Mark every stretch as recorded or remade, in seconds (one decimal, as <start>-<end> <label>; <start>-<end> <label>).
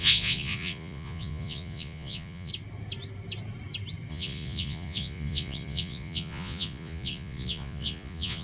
0.0-2.5 remade; 2.5-4.1 recorded; 4.1-8.4 remade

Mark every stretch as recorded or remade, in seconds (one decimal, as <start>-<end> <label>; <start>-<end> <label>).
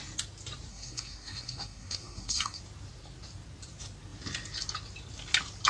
0.0-0.7 recorded; 0.7-2.6 remade; 2.6-5.7 recorded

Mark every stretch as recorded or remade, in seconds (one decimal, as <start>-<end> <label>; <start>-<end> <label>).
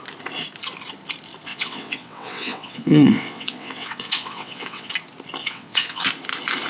0.0-1.5 recorded; 1.5-4.9 remade; 4.9-5.4 recorded; 5.4-6.1 remade; 6.1-6.7 recorded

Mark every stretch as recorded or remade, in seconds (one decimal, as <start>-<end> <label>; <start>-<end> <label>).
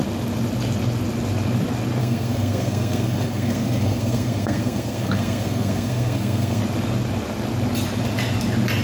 0.0-2.0 recorded; 2.0-6.6 remade; 6.6-8.8 recorded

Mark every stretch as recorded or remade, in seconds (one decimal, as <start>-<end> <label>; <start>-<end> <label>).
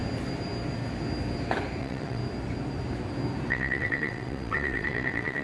0.0-1.8 recorded; 1.8-2.2 remade; 2.2-3.5 recorded; 3.5-5.4 remade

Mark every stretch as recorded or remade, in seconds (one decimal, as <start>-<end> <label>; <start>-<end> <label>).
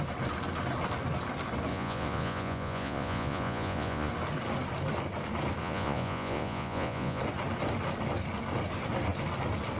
0.0-1.7 recorded; 1.7-4.1 remade; 4.1-5.6 recorded; 5.6-7.2 remade; 7.2-9.8 recorded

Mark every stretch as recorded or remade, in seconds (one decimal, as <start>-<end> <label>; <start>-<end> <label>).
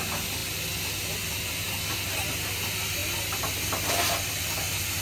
0.0-5.0 recorded